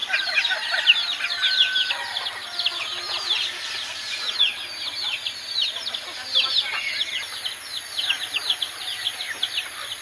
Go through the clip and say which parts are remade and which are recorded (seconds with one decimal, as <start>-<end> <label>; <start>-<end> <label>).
0.0-3.7 remade; 3.7-10.0 recorded